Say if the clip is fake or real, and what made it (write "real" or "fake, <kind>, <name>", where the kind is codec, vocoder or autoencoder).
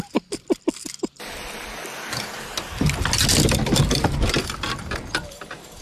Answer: real